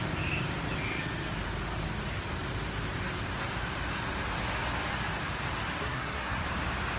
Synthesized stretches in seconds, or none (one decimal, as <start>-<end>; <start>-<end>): 5.8-6.4